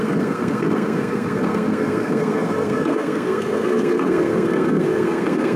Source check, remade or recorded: remade